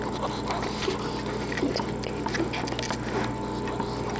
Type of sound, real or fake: real